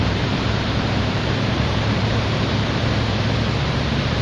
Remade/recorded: remade